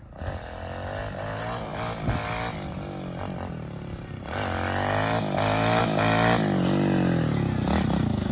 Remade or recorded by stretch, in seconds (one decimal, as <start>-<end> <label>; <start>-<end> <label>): 0.0-8.3 recorded